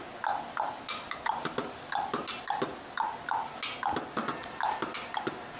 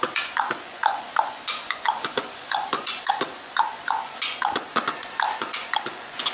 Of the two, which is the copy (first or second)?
second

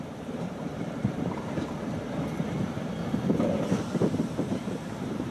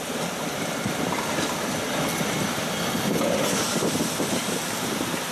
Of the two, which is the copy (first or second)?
first